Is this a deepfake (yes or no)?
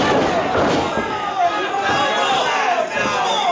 no